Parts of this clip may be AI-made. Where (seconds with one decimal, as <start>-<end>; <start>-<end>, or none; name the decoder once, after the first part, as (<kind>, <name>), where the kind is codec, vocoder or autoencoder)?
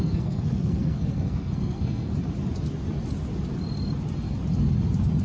0.0-2.1 (codec, SNAC)